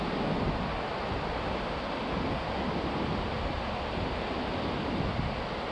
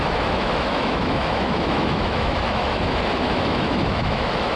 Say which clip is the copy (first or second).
second